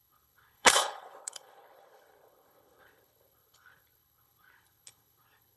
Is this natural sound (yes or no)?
no